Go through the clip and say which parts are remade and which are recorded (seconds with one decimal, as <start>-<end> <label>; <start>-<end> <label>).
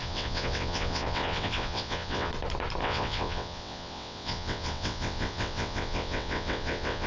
0.0-2.3 remade; 2.3-2.8 recorded; 2.8-7.1 remade